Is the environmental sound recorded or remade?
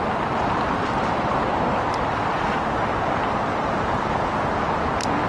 recorded